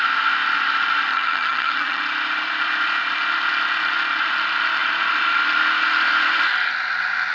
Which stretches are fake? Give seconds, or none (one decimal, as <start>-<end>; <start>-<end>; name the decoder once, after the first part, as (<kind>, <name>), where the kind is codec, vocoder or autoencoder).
1.1-2.0 (vocoder, HiFi-GAN)